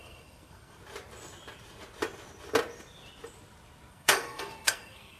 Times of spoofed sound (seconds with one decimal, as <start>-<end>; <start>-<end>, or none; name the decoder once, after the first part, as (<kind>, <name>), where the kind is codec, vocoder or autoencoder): 0.0-0.8 (codec, SNAC); 3.9-5.2

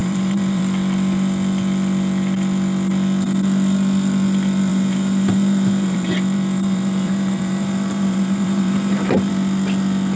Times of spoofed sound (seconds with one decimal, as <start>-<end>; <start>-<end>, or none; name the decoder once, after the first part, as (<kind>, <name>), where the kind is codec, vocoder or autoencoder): 0.0-0.6 (vocoder, BigVGAN v2); 4.7-9.3

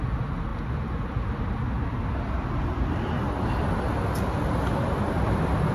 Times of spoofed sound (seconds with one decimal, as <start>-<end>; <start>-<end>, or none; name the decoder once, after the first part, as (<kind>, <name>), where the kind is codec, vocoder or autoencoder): none